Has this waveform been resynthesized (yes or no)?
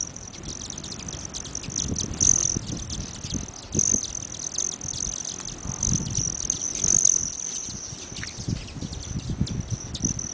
no